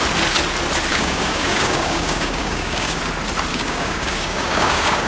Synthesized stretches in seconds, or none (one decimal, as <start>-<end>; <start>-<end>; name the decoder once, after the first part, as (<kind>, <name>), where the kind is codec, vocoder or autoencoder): 0.9-3.0 (codec, DAC); 3.5-5.1